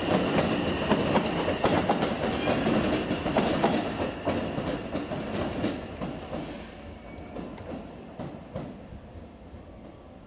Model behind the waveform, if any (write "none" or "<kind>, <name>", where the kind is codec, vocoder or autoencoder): none